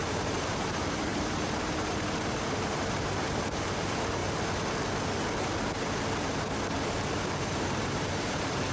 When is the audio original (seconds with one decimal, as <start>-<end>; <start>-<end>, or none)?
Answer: 4.2-7.4